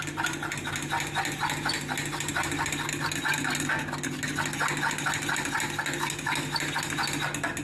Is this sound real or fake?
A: real